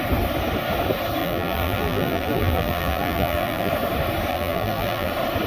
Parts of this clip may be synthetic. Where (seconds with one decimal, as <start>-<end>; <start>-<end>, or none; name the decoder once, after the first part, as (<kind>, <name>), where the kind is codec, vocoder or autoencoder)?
1.2-3.7 (vocoder, BigVGAN v2); 4.3-5.1